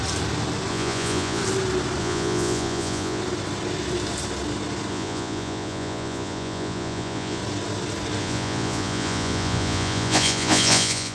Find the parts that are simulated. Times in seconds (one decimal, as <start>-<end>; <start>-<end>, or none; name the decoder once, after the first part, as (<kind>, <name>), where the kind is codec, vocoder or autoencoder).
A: 0.7-1.4 (vocoder, Vocos); 2.0-3.2; 4.9-7.4; 8.2-11.1

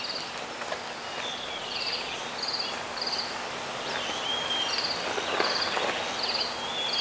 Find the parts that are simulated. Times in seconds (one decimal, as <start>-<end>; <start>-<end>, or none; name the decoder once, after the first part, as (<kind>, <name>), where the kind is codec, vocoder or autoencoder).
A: 1.3-2.3 (vocoder, Vocos)

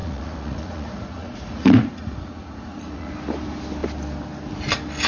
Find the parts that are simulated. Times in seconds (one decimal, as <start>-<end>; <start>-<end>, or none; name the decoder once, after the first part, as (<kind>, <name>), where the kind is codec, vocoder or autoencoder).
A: 0.0-3.1 (vocoder, Vocos)

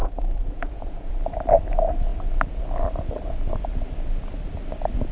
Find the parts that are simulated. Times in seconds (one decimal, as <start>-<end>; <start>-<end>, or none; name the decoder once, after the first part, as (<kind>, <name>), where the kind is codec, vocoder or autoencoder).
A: 0.0-1.1 (vocoder, Vocos)

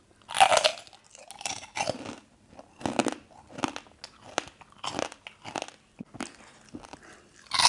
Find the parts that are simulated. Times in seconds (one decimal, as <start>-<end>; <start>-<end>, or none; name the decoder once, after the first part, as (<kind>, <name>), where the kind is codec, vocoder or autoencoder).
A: none

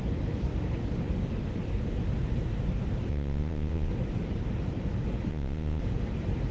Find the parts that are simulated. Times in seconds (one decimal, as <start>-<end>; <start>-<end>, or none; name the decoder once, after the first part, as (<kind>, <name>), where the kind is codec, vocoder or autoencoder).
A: 3.1-3.9 (vocoder, Vocos); 5.3-5.8